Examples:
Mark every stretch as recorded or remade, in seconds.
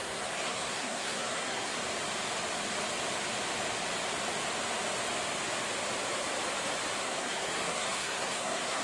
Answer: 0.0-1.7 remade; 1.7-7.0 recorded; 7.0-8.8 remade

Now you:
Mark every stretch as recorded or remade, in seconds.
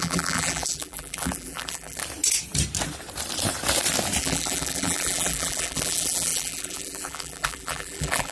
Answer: 0.0-2.0 remade; 2.0-4.2 recorded; 4.2-8.3 remade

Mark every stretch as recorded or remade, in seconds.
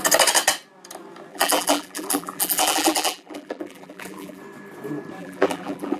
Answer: 0.0-1.3 recorded; 1.3-4.4 remade; 4.4-5.2 recorded; 5.2-6.0 remade